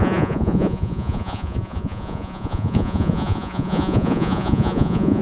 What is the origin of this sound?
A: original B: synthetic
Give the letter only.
B